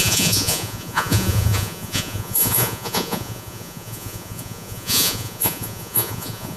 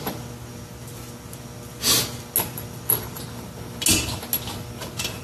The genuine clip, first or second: second